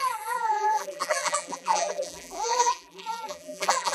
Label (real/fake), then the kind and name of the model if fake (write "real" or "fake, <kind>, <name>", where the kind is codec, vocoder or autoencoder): fake, vocoder, BigVGAN v2